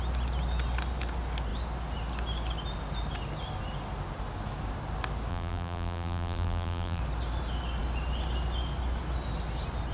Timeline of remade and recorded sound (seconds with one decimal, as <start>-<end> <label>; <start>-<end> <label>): 0.0-5.3 recorded; 5.3-7.0 remade; 7.0-9.9 recorded